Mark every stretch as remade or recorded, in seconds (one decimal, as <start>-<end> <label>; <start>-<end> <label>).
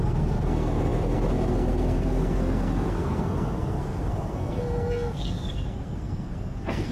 0.0-6.9 remade